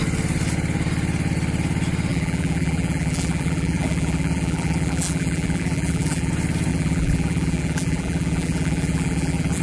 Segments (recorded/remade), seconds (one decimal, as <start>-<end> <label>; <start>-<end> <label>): 0.0-2.1 recorded; 2.1-6.3 remade; 6.3-6.7 recorded; 6.7-9.6 remade